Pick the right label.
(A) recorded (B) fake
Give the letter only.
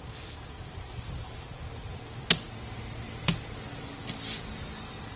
A